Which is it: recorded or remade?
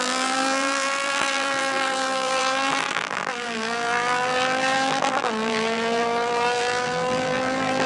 remade